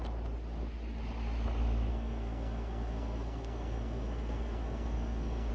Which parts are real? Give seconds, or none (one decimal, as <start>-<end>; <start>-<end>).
0.0-1.9